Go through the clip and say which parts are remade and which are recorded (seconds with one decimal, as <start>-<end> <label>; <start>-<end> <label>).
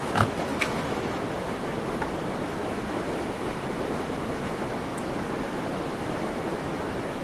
0.0-7.2 remade